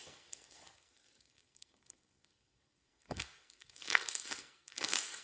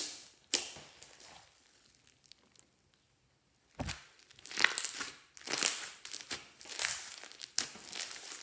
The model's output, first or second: first